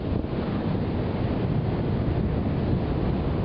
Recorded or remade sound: recorded